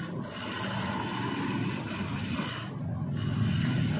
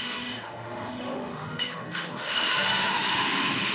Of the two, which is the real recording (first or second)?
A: first